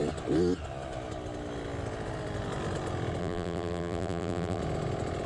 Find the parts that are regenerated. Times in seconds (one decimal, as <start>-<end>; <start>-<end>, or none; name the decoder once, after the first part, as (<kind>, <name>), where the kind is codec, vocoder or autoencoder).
3.2-4.6 (vocoder, BigVGAN v2)